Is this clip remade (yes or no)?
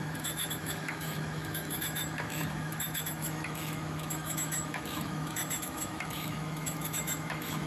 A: yes